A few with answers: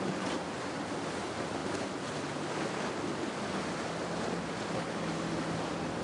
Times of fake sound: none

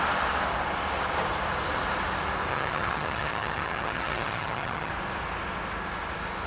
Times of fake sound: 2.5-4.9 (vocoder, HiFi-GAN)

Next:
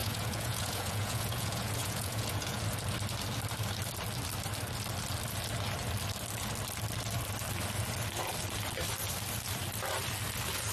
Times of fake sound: 0.0-2.6 (vocoder, Vocos)

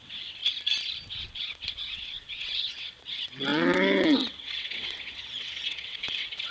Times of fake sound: 0.0-0.4 (vocoder, WaveNeXt); 1.1-6.5